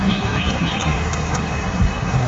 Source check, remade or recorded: remade